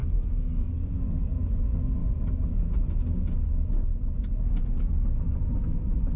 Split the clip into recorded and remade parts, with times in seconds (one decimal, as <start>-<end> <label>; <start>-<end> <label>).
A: 0.0-2.0 recorded; 2.0-2.5 remade; 2.5-6.2 recorded

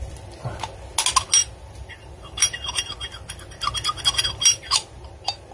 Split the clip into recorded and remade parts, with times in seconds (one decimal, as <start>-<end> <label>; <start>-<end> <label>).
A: 0.0-1.4 recorded; 1.4-4.7 remade; 4.7-5.5 recorded

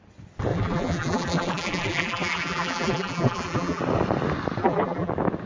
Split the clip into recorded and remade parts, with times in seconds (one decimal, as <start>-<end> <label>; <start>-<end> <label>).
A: 0.0-0.5 recorded; 0.5-3.8 remade; 3.8-4.6 recorded; 4.6-5.1 remade; 5.1-5.5 recorded

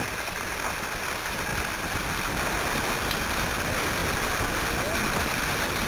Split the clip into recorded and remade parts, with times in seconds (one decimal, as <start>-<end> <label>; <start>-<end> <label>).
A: 0.0-5.9 recorded

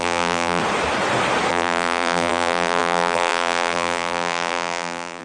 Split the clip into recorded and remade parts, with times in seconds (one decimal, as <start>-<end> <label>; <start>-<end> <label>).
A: 0.0-0.6 remade; 0.6-1.5 recorded; 1.5-5.2 remade

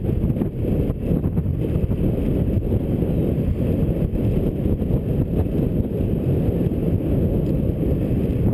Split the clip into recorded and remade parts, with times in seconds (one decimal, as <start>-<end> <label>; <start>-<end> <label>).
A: 0.0-1.5 recorded; 1.5-2.2 remade; 2.2-8.5 recorded